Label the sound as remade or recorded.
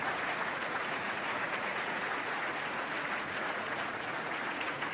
remade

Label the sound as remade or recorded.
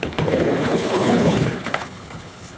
remade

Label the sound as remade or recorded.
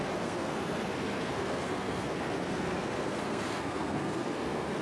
remade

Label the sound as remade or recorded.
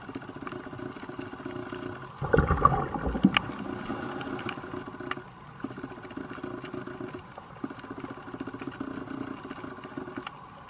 recorded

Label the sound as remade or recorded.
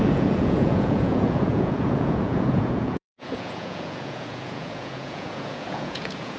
remade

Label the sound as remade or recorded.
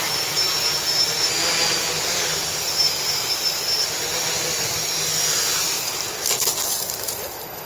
recorded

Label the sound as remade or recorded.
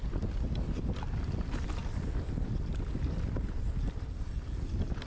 recorded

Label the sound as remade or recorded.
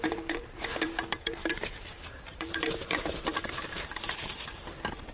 remade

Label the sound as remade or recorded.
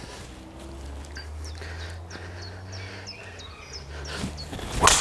recorded